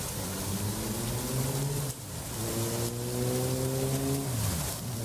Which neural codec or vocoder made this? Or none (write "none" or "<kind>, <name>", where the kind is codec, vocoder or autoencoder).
none